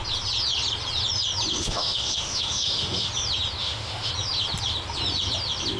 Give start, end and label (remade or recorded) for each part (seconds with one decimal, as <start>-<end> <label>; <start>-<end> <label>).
0.0-1.5 recorded; 1.5-3.1 remade; 3.1-3.6 recorded; 3.6-4.1 remade; 4.1-5.8 recorded